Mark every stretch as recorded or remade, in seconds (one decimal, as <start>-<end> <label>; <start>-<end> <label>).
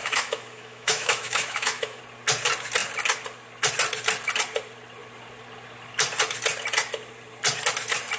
0.0-2.0 remade; 2.0-8.2 recorded